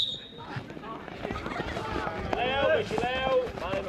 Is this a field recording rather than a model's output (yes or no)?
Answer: yes